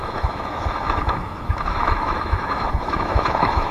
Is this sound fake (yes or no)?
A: yes